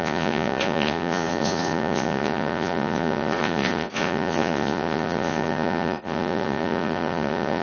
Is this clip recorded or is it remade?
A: remade